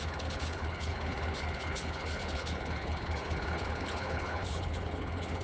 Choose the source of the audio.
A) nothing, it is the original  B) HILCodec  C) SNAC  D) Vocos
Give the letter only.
B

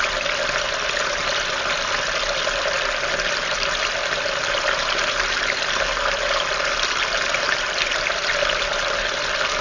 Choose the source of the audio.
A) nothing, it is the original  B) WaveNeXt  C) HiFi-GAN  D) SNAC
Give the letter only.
A